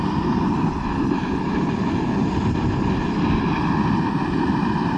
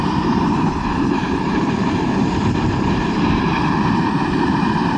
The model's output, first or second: second